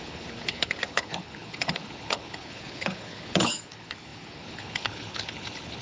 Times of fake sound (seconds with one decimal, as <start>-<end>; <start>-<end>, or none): 0.0-5.8